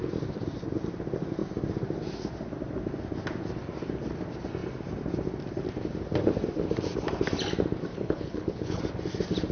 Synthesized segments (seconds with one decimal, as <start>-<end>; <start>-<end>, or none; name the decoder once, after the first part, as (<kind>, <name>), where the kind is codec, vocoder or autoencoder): 7.9-8.8 (codec, HILCodec)